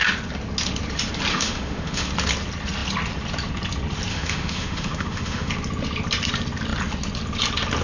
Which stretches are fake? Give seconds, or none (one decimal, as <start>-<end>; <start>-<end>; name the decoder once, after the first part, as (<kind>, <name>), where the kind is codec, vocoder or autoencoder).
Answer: 1.3-2.1 (autoencoder, DAC-VAE); 4.1-5.5